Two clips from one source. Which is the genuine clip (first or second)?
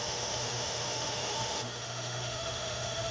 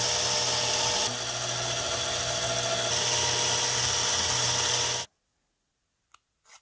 second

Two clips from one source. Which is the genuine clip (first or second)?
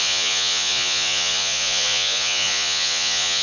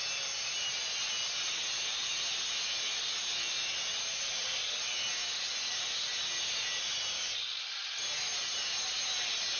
second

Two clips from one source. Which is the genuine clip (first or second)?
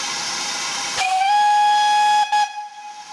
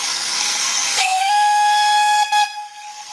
first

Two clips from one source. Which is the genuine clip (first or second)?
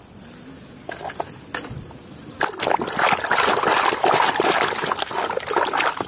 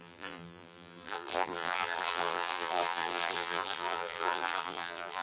first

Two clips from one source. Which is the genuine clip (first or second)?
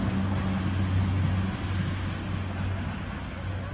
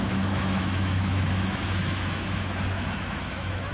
first